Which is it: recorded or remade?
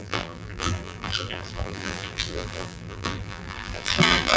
remade